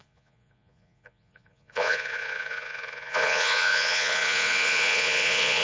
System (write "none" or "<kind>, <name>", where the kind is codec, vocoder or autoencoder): vocoder, Vocos